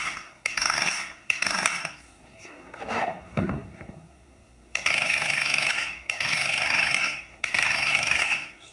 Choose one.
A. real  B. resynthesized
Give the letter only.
B